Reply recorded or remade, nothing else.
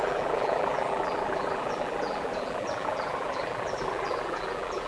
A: remade